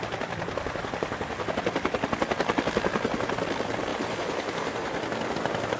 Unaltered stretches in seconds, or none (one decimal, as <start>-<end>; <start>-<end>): 0.0-5.8